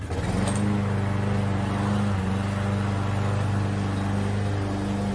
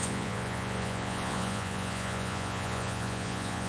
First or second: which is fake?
second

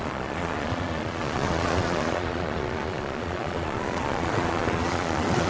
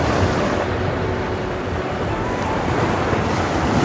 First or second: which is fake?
first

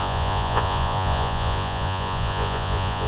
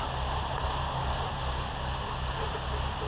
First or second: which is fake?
first